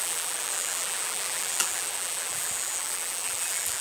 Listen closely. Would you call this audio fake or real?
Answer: fake